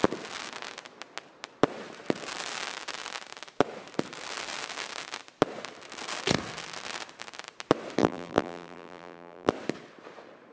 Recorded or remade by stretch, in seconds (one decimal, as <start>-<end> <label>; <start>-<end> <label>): 0.0-8.0 recorded; 8.0-9.5 remade; 9.5-10.5 recorded